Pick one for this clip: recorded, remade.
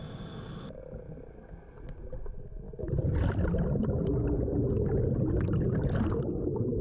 recorded